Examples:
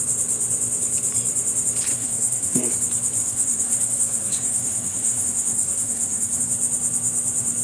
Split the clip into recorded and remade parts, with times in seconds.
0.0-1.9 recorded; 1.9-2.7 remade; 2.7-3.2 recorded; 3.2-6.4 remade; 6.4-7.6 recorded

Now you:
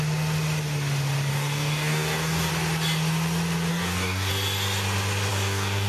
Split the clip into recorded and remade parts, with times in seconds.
0.0-1.3 recorded; 1.3-2.5 remade; 2.5-3.7 recorded; 3.7-4.3 remade; 4.3-5.3 recorded; 5.3-5.9 remade

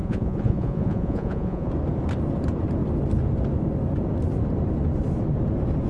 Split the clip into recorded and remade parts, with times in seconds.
0.0-1.7 remade; 1.7-5.9 recorded

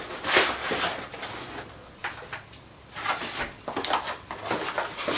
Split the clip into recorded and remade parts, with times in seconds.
0.0-5.2 recorded

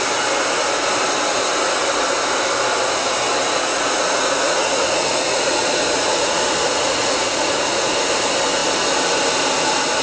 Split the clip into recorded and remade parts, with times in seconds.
0.0-3.4 recorded; 3.4-7.9 remade; 7.9-10.0 recorded

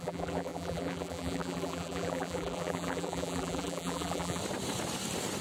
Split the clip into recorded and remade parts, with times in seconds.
0.0-4.4 remade; 4.4-5.4 recorded

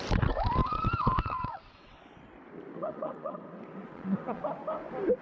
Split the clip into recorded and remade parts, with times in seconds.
0.0-0.6 recorded; 0.6-2.0 remade; 2.0-2.8 recorded; 2.8-4.4 remade; 4.4-5.2 recorded